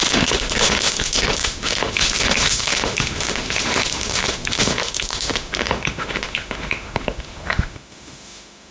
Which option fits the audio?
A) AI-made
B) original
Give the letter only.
A